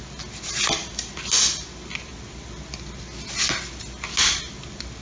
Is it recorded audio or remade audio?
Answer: recorded